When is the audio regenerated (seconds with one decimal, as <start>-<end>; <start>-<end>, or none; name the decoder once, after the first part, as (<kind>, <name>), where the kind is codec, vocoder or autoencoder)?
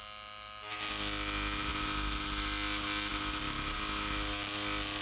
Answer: none